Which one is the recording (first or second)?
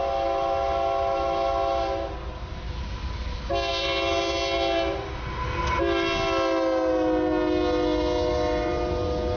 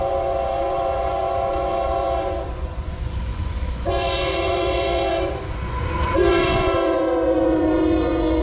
first